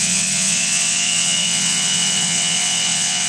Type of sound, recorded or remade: remade